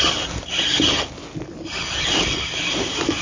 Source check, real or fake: real